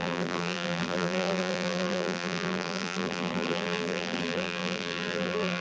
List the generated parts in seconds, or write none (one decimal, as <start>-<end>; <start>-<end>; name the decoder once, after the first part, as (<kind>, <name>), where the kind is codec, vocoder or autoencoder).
0.0-5.6 (vocoder, BigVGAN v2)